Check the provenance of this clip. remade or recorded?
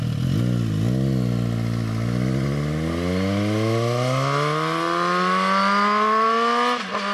recorded